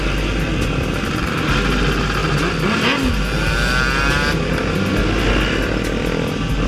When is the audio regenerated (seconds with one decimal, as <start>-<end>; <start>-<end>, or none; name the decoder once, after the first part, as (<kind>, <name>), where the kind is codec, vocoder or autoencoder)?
none

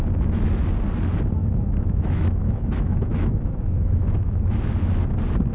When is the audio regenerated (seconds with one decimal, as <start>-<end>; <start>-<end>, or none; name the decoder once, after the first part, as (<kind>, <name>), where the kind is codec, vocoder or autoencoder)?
1.4-4.7 (autoencoder, DAC-VAE)